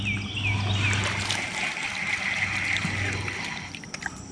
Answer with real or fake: real